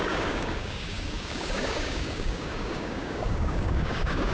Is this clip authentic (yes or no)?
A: no